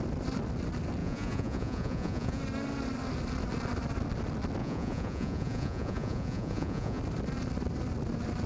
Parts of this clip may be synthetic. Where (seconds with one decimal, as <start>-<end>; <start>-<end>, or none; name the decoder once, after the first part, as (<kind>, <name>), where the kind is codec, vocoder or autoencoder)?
1.0-2.4 (vocoder, Vocos); 4.6-7.0